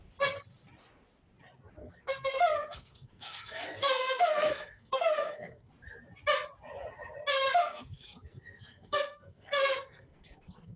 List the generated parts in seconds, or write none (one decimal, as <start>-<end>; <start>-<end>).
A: 1.8-5.7; 7.6-10.8